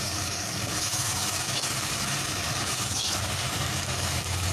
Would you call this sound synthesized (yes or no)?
yes